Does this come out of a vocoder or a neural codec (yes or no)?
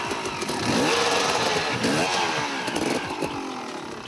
no